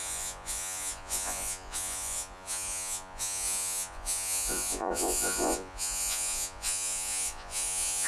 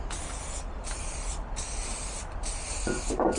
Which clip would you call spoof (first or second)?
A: first